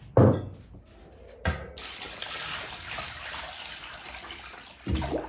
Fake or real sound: real